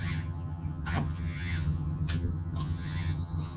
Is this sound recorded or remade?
remade